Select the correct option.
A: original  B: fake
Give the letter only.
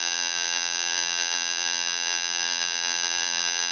B